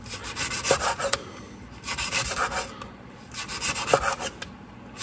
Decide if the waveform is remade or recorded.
remade